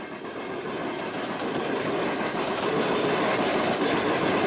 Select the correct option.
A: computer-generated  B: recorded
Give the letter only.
B